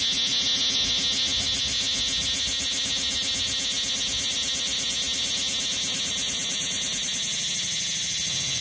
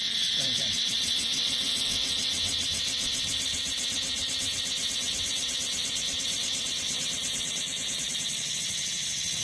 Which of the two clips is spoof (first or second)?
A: second